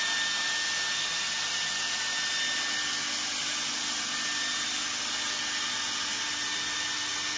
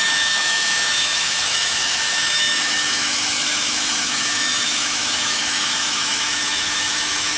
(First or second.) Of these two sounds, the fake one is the second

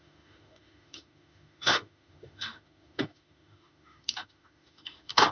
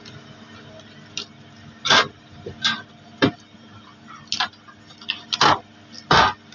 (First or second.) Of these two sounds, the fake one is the first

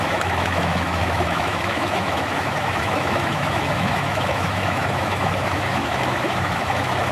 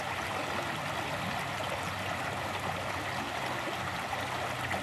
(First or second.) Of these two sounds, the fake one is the first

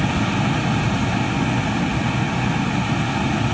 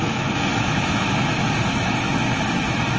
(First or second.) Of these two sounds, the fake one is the second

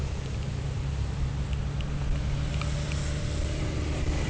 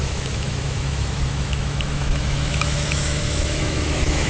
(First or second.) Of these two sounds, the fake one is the second